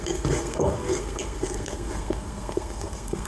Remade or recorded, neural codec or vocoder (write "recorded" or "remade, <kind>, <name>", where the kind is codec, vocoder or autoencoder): remade, codec, SNAC